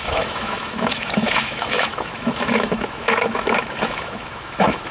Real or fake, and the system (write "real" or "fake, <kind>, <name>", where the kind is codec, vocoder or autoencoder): fake, autoencoder, DAC-VAE